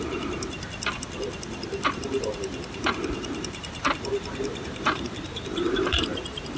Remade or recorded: remade